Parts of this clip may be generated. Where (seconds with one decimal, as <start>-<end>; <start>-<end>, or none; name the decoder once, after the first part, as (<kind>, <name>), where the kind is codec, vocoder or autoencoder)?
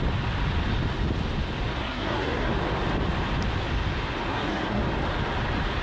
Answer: 1.8-2.5 (codec, SNAC); 4.3-4.8